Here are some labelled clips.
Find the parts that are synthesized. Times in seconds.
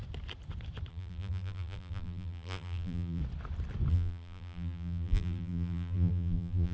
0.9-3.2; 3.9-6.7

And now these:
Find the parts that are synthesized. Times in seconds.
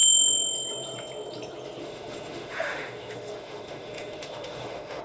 1.8-5.0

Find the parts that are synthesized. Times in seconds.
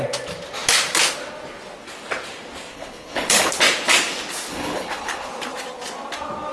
2.7-3.5; 4.5-5.3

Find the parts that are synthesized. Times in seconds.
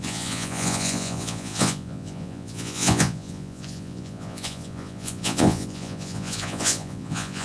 0.0-7.4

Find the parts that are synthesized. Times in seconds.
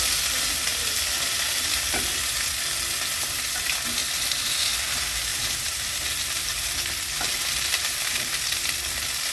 0.7-1.7; 5.3-6.7; 7.3-8.4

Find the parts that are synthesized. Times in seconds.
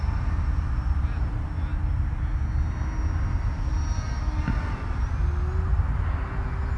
none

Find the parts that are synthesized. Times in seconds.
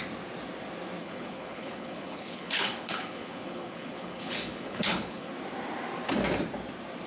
1.0-5.3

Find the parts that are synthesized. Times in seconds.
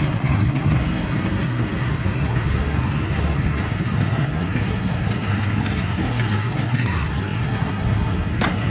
0.0-8.7